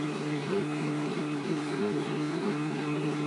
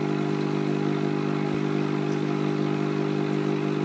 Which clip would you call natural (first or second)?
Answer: second